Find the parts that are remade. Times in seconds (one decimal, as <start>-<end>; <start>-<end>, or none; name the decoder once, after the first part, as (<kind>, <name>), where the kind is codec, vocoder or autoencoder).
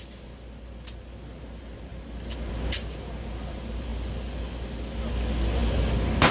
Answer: none